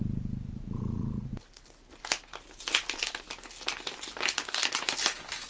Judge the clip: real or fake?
real